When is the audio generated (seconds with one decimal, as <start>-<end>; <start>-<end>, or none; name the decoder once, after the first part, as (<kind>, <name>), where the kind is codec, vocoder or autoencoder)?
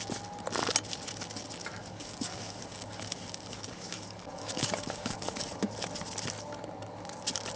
1.8-5.6 (codec, DAC)